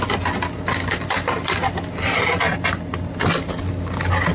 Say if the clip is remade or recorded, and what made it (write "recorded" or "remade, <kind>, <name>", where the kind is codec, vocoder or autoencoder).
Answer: recorded